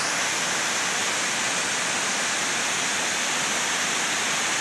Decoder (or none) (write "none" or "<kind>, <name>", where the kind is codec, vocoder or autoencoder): none